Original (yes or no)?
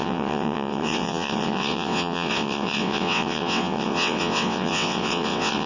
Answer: no